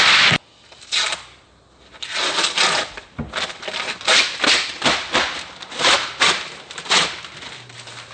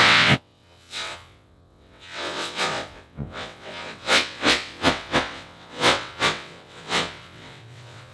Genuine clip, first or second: first